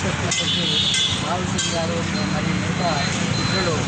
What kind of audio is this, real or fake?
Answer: real